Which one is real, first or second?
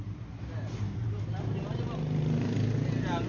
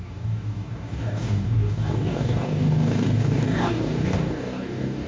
first